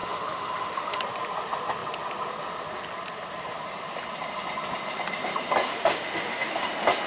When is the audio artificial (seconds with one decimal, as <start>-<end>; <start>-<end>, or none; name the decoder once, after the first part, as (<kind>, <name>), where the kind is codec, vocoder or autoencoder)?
0.0-1.0 (autoencoder, DAC-VAE); 5.7-6.5